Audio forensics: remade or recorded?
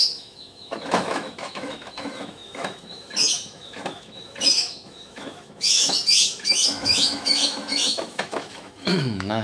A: remade